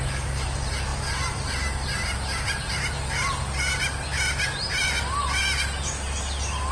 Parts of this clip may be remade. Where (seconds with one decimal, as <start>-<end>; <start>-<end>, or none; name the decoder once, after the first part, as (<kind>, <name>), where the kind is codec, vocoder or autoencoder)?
none